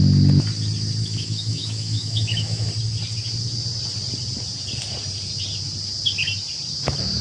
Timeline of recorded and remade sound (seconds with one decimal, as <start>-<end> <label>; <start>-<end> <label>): 0.0-1.0 recorded; 1.0-2.7 remade; 2.7-7.2 recorded